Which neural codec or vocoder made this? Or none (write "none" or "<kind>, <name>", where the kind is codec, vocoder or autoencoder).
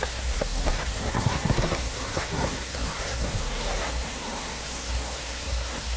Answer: codec, SNAC